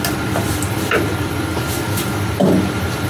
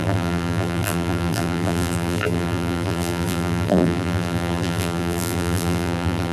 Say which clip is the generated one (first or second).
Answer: second